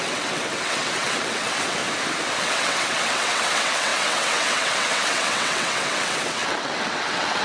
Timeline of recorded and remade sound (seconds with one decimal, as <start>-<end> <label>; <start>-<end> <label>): 0.0-1.8 remade; 1.8-2.4 recorded; 2.4-7.4 remade

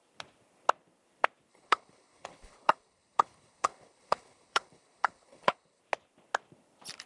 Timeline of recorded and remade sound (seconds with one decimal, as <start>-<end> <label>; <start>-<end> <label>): 0.0-1.5 recorded; 1.5-5.8 remade; 5.8-7.1 recorded

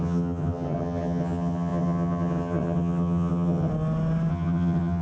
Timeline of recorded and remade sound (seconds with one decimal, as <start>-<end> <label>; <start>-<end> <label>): 0.0-3.7 remade; 3.7-4.3 recorded; 4.3-5.0 remade

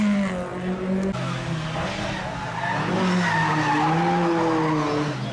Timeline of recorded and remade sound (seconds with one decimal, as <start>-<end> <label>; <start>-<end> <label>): 0.0-5.3 recorded

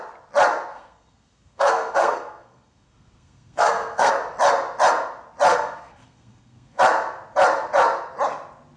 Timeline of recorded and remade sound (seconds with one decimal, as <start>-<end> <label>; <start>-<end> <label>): 0.0-0.7 recorded; 0.7-4.1 remade; 4.1-5.5 recorded; 5.5-6.8 remade; 6.8-8.8 recorded

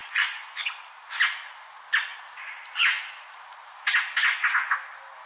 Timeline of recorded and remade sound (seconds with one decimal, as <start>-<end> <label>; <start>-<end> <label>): 0.0-0.7 remade; 0.7-5.3 recorded